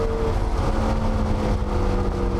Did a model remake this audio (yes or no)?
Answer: no